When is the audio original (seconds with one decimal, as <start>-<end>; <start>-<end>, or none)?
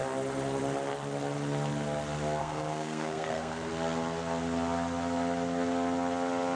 0.0-2.4; 3.7-6.6